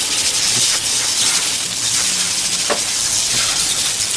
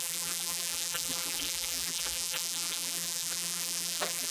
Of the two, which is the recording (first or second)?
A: first